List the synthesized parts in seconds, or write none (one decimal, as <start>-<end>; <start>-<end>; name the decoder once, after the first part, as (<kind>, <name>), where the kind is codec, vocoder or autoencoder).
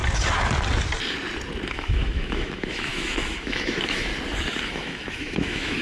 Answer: 1.7-4.1 (autoencoder, DAC-VAE); 4.7-5.8